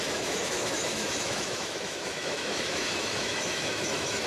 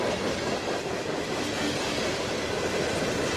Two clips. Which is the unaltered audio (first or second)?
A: second